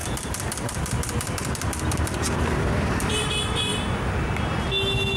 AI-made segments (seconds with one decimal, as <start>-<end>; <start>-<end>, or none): 0.0-3.7